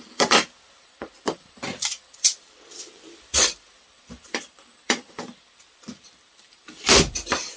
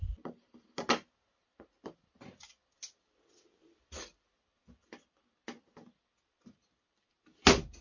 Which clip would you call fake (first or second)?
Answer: first